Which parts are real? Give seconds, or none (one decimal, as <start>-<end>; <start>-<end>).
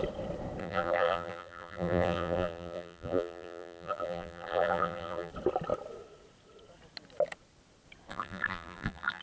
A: 0.0-0.6; 5.3-8.1